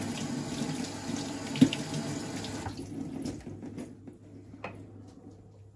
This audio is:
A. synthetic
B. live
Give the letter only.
B